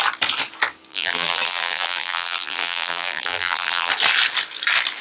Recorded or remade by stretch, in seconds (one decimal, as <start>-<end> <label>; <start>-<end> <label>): 0.0-0.9 recorded; 0.9-3.9 remade; 3.9-5.0 recorded